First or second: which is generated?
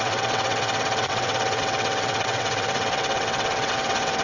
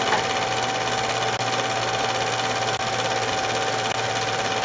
first